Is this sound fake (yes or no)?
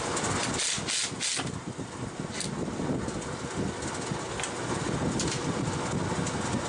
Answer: no